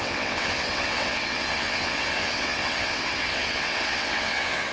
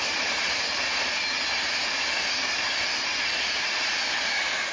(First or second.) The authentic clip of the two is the second